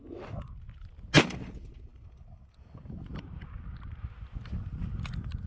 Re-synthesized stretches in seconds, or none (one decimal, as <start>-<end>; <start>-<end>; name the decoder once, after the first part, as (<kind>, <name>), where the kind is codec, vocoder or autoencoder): none